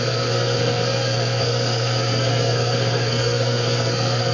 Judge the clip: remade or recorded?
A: remade